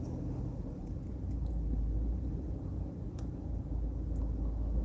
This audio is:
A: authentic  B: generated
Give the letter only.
A